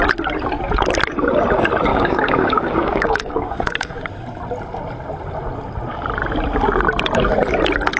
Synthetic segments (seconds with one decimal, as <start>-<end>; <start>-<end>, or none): 1.9-4.1

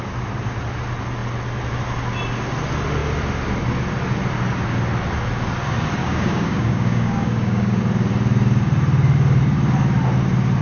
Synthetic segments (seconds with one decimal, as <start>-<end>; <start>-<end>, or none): 6.0-7.8